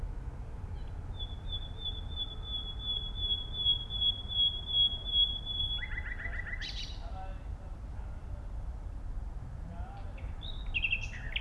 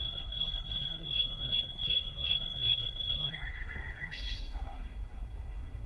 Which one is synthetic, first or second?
second